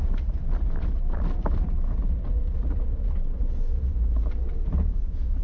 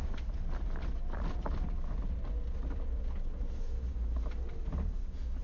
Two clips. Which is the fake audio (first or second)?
first